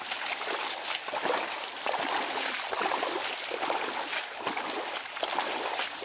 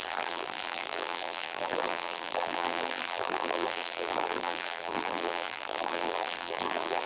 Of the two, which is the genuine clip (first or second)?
first